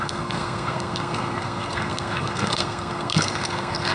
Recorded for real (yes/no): no